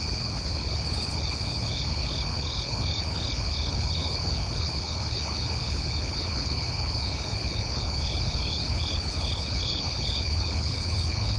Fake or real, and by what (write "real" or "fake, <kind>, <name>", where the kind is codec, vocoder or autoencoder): fake, codec, HILCodec